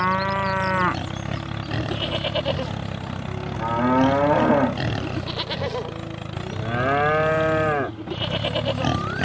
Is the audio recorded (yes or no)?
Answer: yes